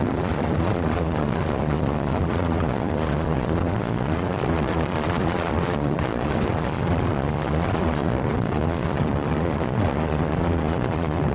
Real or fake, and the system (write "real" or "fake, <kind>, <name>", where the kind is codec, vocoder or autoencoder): fake, vocoder, Vocos